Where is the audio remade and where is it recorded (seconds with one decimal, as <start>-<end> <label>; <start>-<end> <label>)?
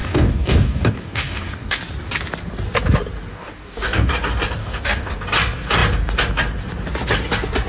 0.0-1.8 remade; 1.8-3.3 recorded; 3.3-4.1 remade; 4.1-4.6 recorded; 4.6-5.1 remade; 5.1-7.7 recorded